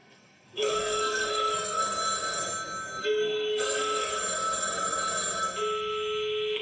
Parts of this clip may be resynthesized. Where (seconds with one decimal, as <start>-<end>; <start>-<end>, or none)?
0.0-1.8; 3.0-4.1